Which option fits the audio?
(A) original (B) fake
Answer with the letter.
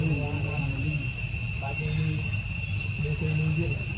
A